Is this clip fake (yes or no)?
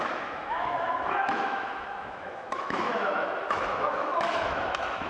yes